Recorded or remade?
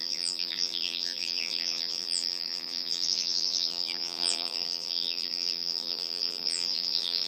remade